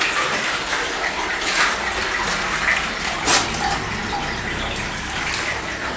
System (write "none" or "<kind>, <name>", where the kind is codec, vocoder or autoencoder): none